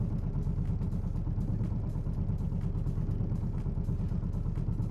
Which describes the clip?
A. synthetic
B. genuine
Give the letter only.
B